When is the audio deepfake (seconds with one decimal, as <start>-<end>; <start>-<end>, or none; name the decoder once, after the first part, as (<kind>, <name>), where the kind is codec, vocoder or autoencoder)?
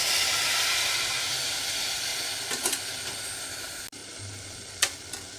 none